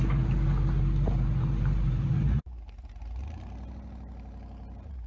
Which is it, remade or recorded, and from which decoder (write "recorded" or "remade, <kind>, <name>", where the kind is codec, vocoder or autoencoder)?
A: recorded